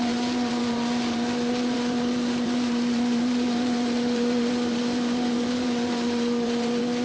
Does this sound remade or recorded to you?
remade